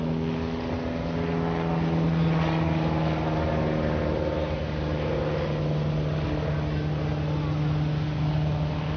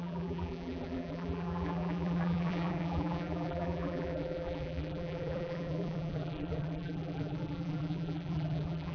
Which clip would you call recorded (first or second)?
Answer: first